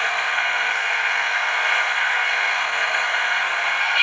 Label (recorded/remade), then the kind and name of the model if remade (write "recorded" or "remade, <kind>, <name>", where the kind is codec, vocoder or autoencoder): remade, codec, SNAC